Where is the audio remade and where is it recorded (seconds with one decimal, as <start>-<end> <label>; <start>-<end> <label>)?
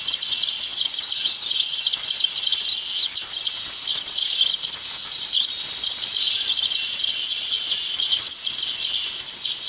0.0-7.3 recorded; 7.3-8.3 remade; 8.3-9.7 recorded